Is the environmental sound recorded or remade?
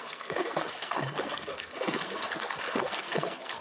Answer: remade